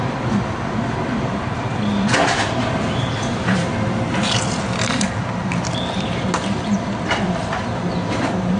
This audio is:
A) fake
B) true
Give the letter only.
B